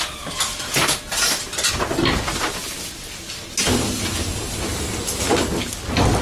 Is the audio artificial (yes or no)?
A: no